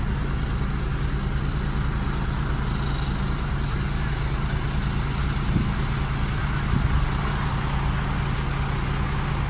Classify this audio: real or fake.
real